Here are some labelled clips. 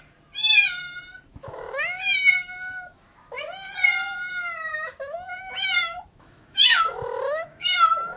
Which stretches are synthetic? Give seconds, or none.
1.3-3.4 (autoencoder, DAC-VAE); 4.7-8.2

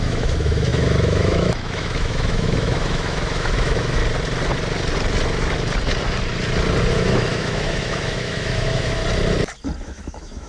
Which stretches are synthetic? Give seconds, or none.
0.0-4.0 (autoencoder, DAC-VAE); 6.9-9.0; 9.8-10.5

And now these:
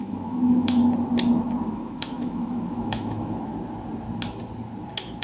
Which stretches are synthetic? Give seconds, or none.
0.0-0.8 (autoencoder, DAC-VAE); 1.7-3.5

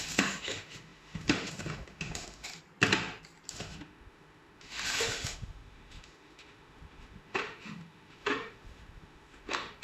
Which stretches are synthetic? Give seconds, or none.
0.0-2.5 (autoencoder, DAC-VAE); 3.5-9.8